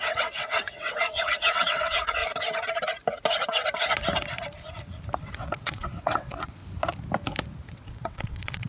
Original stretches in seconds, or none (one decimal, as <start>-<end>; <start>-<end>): 2.2-5.2; 6.6-7.7